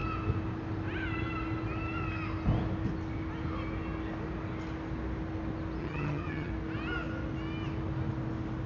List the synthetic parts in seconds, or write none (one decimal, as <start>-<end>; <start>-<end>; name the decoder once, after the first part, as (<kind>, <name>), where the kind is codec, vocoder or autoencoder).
5.8-6.5 (vocoder, HiFi-GAN)